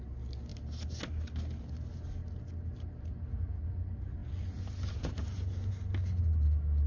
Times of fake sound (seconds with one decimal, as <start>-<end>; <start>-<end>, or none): none